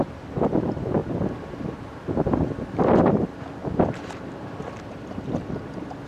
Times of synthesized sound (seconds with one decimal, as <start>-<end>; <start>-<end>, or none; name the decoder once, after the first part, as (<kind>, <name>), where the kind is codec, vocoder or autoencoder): 3.6-4.5 (vocoder, BigVGAN v2)